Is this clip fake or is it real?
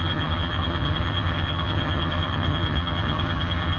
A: fake